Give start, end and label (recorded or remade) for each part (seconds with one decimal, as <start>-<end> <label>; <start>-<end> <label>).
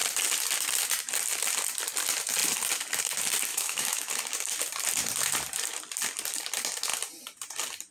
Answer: 0.0-3.5 recorded; 3.5-4.1 remade; 4.1-7.9 recorded